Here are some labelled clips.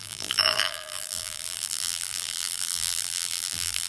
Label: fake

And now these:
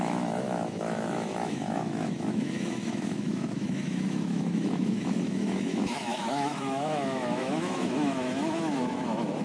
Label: fake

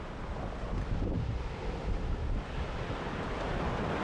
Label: real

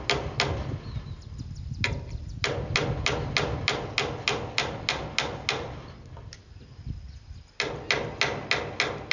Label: real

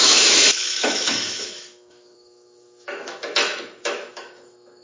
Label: fake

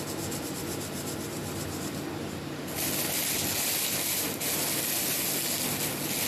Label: real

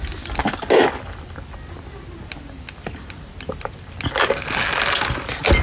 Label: real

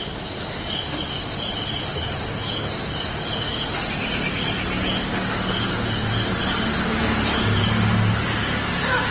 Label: real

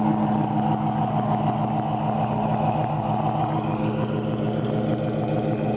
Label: real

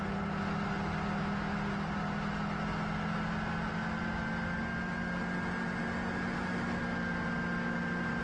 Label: real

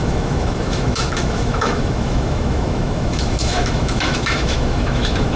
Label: fake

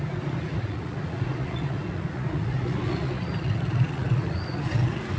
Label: fake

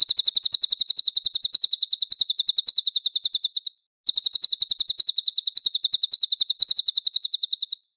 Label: real